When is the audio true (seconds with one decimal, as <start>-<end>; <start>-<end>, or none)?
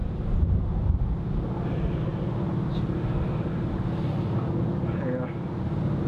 0.6-6.1